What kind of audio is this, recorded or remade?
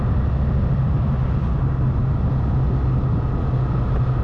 recorded